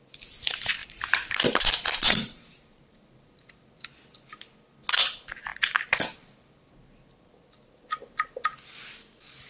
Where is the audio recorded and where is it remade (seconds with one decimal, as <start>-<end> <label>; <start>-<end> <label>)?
0.0-0.8 recorded; 0.8-3.7 remade; 3.7-5.5 recorded; 5.5-7.0 remade; 7.0-9.5 recorded